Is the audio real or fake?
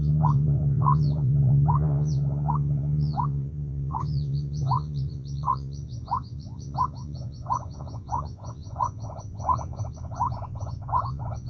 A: fake